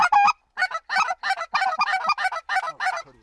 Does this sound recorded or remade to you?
recorded